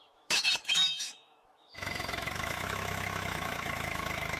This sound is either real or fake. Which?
fake